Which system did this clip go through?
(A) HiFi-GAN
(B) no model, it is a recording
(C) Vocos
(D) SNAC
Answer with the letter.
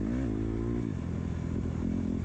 B